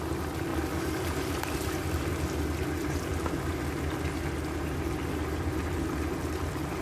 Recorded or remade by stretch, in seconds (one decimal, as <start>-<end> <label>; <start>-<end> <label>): 0.0-6.8 recorded